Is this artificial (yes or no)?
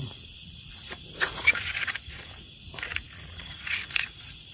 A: yes